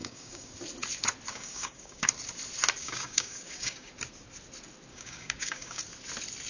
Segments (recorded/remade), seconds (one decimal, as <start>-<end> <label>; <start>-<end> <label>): 0.0-0.5 remade; 0.5-1.3 recorded; 1.3-2.1 remade; 2.1-2.8 recorded; 2.8-3.9 remade; 3.9-4.9 recorded; 4.9-5.8 remade; 5.8-6.5 recorded